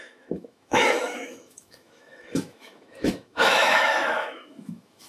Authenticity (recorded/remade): remade